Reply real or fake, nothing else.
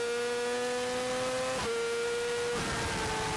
real